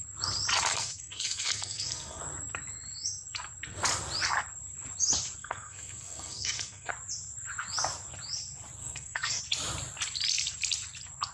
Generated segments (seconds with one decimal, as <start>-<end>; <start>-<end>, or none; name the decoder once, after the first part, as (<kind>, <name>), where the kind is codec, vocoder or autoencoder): 0.7-2.2 (codec, SNAC); 5.4-6.9; 8.8-9.4